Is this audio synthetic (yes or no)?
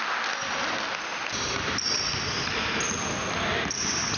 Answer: no